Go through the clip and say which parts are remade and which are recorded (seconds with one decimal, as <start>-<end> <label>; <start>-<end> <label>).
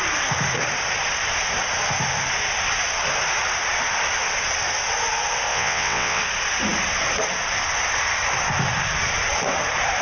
0.0-5.5 recorded; 5.5-6.2 remade; 6.2-10.0 recorded